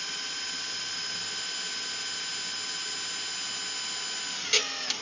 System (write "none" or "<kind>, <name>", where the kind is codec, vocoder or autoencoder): none